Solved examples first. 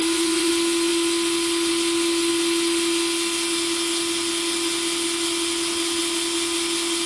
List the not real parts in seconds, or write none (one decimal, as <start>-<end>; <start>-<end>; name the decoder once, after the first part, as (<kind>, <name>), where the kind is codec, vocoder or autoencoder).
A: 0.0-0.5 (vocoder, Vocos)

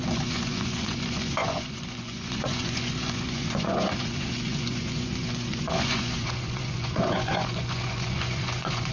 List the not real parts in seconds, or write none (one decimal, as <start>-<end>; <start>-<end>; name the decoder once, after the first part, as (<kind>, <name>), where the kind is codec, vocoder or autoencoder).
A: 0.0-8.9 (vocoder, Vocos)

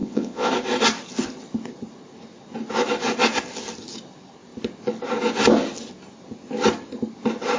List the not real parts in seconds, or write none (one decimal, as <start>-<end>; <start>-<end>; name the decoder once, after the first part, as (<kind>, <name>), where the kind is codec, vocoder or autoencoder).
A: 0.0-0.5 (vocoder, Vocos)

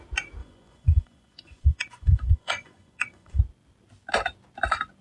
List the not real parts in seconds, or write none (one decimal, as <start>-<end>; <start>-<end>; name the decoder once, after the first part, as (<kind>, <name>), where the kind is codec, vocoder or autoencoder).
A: 0.4-3.4 (vocoder, Vocos)

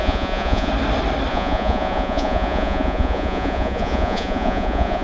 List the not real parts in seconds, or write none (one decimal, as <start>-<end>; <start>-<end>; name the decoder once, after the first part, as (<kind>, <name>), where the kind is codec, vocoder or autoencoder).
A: 0.0-0.7 (vocoder, Vocos); 1.3-5.0

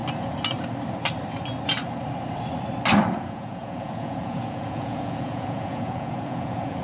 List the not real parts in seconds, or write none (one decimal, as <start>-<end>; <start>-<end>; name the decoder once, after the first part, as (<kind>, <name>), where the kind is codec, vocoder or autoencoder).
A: 3.2-6.8 (vocoder, Vocos)